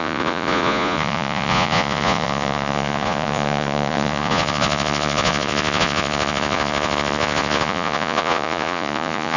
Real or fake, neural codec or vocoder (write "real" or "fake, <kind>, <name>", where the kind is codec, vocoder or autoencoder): fake, vocoder, Vocos